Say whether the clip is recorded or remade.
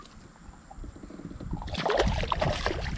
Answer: recorded